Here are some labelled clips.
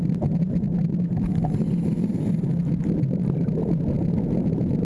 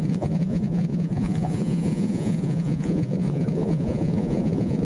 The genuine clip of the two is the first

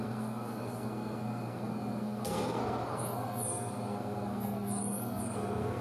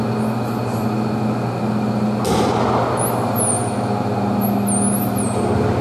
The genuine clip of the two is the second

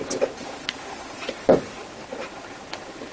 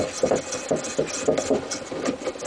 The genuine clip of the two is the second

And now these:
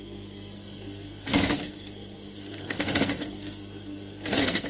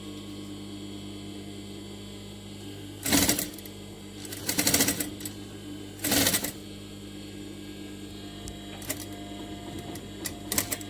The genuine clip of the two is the second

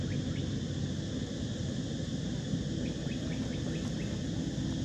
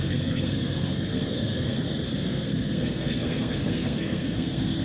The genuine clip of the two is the first